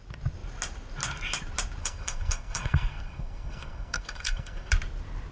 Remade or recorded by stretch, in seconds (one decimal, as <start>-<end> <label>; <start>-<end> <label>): 0.0-1.8 recorded; 1.8-4.7 remade; 4.7-5.3 recorded